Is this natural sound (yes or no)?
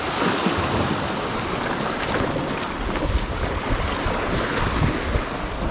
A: yes